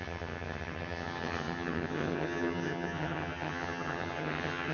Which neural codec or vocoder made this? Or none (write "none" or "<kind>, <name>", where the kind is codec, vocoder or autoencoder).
vocoder, HiFi-GAN